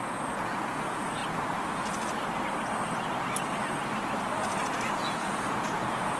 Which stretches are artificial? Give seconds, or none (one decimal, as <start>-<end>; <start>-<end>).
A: 0.0-1.2; 4.9-6.2